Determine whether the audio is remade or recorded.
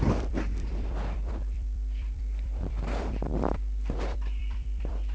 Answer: remade